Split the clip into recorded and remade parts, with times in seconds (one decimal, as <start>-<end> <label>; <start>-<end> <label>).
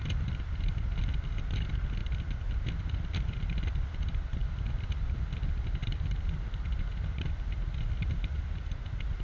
0.0-9.2 recorded